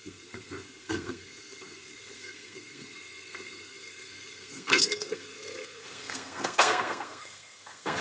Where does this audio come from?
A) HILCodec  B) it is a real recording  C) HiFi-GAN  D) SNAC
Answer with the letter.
D